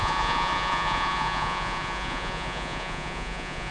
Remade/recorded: remade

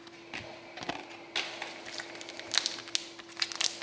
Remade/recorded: recorded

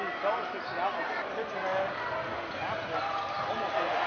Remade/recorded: recorded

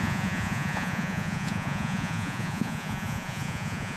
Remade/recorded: remade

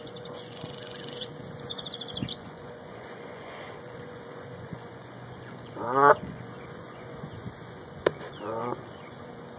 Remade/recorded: remade